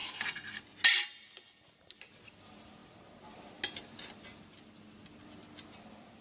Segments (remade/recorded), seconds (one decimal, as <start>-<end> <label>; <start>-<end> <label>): 0.0-0.6 remade; 0.6-6.2 recorded